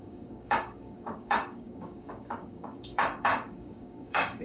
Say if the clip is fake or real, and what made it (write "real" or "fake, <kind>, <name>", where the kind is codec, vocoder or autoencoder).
fake, codec, DAC